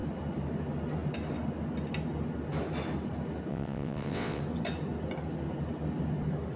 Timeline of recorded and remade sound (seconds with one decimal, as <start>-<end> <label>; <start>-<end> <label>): 0.0-3.5 recorded; 3.5-4.4 remade; 4.4-6.6 recorded